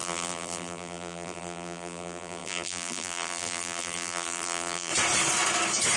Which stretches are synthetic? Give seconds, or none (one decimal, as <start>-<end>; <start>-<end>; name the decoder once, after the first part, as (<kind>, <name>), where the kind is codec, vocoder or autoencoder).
0.0-4.9 (vocoder, BigVGAN v2)